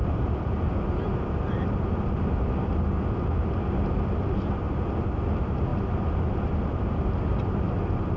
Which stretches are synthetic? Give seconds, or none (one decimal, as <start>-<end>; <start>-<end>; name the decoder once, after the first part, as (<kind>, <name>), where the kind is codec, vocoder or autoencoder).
none